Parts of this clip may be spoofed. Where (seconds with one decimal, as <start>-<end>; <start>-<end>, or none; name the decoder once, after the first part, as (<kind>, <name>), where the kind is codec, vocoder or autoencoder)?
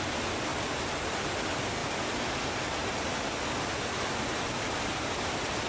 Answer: none